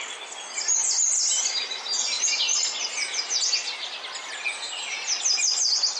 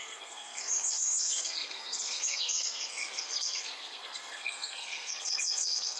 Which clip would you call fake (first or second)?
second